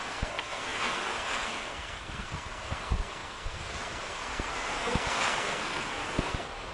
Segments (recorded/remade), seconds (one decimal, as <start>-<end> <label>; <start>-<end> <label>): 0.0-6.7 remade